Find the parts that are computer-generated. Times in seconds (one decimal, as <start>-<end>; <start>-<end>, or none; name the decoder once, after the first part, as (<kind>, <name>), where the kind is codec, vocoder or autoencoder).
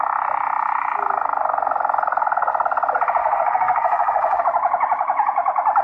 3.2-4.4 (codec, SNAC)